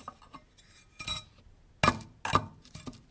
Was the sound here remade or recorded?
recorded